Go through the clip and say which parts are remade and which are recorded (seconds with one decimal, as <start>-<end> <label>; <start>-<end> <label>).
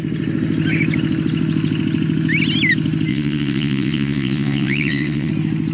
0.0-3.1 recorded; 3.1-5.3 remade; 5.3-5.7 recorded